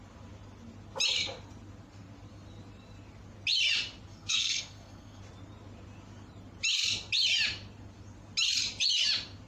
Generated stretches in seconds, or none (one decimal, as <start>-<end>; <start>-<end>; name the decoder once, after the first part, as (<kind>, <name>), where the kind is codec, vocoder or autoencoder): 4.1-5.2 (codec, SNAC)

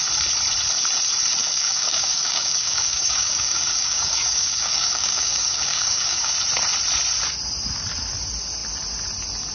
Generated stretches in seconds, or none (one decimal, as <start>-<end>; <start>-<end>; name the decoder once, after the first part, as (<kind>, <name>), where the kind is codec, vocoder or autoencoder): 1.4-6.3 (codec, DAC)

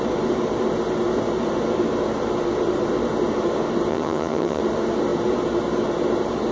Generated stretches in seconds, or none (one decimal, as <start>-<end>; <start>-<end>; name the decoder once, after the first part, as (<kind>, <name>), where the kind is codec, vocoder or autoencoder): 3.9-4.6 (vocoder, HiFi-GAN)

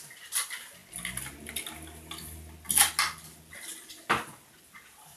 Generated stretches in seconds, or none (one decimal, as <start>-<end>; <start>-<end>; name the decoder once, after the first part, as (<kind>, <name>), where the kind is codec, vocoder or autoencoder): none

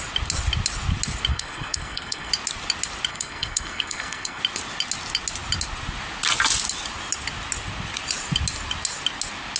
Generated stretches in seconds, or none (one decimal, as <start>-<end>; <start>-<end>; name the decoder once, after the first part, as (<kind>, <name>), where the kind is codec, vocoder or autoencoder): 1.3-2.3 (codec, SNAC); 3.1-4.4

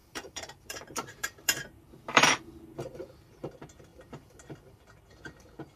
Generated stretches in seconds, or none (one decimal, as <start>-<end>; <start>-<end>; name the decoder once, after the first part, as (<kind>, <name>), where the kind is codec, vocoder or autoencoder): 0.0-3.5 (vocoder, BigVGAN v2)

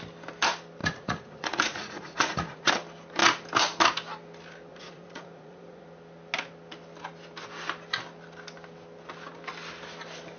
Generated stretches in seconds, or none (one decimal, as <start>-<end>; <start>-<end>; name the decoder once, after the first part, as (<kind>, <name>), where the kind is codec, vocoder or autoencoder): 0.8-2.7 (vocoder, Vocos); 4.7-5.8